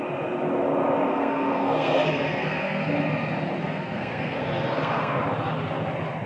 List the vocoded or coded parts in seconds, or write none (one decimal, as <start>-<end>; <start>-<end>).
1.1-2.9; 3.6-5.2